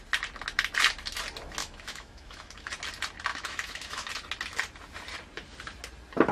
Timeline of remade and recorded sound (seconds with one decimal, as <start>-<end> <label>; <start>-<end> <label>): 0.0-1.6 recorded; 1.6-2.7 remade; 2.7-3.3 recorded; 3.3-4.1 remade; 4.1-6.3 recorded